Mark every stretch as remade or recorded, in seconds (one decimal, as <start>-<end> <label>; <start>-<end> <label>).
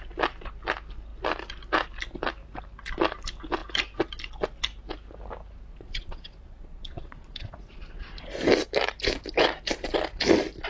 0.0-5.7 recorded; 5.7-8.3 remade; 8.3-10.7 recorded